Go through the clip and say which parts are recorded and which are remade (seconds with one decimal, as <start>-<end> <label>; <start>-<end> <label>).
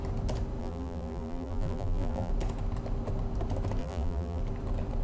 0.0-0.6 recorded; 0.6-2.3 remade; 2.3-3.8 recorded; 3.8-4.4 remade; 4.4-5.0 recorded